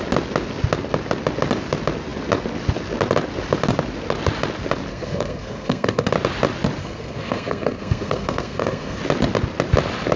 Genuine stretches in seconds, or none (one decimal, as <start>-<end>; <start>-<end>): 0.0-4.9; 6.1-6.8; 9.0-10.2